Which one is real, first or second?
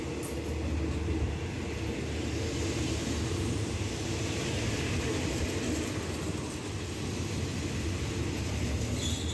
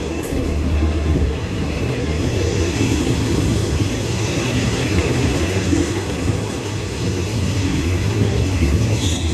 first